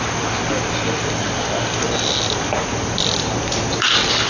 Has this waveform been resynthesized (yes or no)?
no